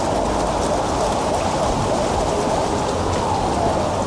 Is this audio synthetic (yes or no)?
no